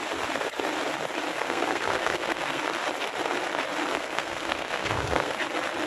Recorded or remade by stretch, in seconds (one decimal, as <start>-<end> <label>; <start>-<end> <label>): 0.0-1.3 recorded; 1.3-2.6 remade; 2.6-3.9 recorded; 3.9-5.4 remade; 5.4-5.9 recorded